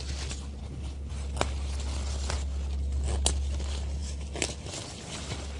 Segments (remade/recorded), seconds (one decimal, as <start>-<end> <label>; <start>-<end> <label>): 0.0-0.6 recorded; 0.6-1.1 remade; 1.1-5.6 recorded